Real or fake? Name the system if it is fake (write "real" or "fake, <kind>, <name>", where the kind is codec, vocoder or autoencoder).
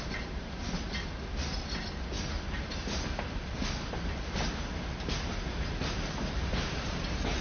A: real